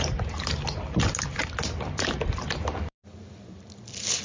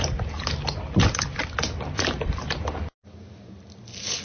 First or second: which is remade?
first